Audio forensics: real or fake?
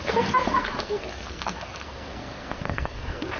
fake